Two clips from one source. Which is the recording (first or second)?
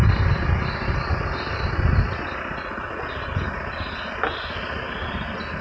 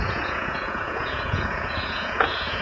first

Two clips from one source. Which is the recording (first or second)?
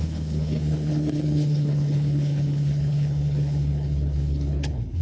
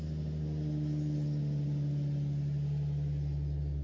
second